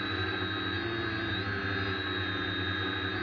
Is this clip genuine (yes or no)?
yes